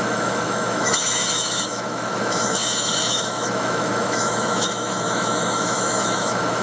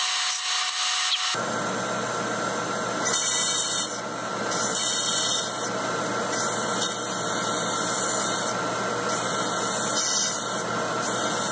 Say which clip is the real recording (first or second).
second